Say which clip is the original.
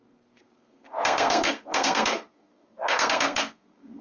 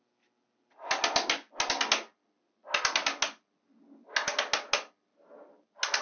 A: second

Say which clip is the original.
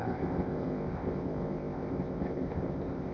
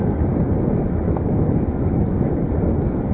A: second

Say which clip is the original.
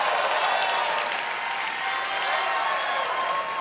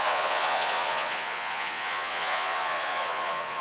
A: first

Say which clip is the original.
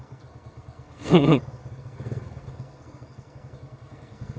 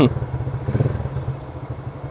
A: second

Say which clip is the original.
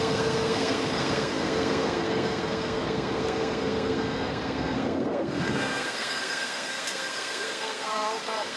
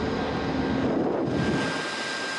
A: second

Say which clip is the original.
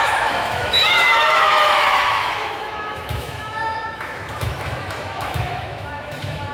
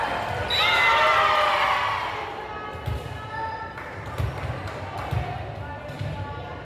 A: second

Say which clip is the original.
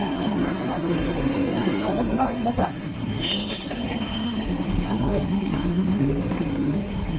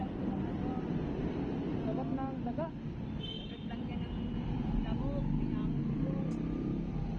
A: second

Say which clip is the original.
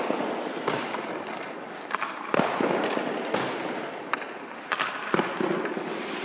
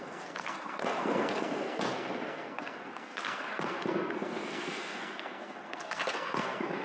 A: first